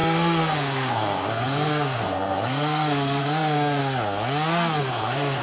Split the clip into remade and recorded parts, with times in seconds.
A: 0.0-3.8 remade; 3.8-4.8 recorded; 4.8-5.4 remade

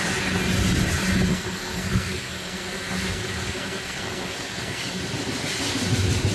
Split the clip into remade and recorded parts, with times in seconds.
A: 0.0-1.3 recorded; 1.3-5.0 remade; 5.0-6.3 recorded

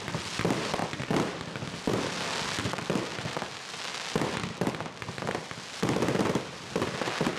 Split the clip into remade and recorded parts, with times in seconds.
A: 0.0-7.4 recorded

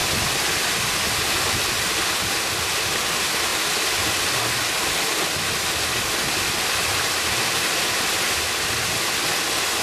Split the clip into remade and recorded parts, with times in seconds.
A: 0.0-9.8 recorded